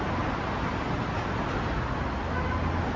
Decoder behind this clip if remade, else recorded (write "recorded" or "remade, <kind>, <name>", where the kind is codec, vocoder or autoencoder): recorded